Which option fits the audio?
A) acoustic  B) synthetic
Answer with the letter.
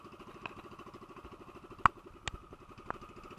A